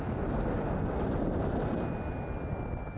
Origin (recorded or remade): recorded